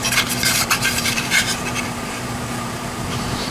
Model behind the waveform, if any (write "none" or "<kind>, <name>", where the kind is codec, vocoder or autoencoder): vocoder, BigVGAN v2